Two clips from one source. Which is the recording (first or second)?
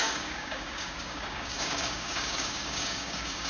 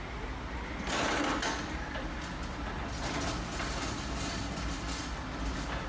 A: second